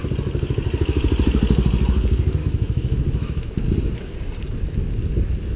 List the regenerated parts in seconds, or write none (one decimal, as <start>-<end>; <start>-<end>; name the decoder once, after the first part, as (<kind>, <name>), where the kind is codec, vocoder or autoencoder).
2.4-3.5 (autoencoder, DAC-VAE)